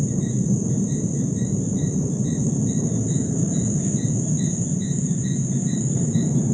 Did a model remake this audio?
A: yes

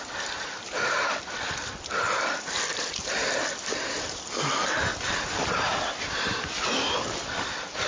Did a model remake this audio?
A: yes